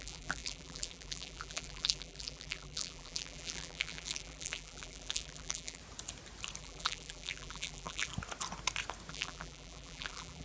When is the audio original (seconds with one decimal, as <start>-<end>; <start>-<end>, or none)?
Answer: 5.8-6.6; 8.1-9.1